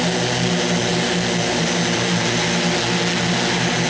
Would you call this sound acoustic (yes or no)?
yes